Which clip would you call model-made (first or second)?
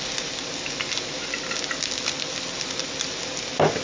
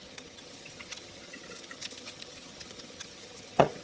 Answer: second